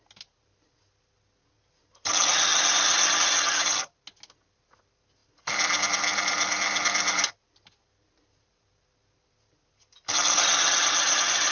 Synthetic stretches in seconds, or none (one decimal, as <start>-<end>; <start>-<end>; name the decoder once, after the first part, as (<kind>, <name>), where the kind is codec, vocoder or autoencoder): none